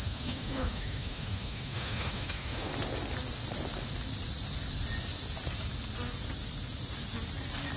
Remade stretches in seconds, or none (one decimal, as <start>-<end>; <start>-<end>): 0.0-2.7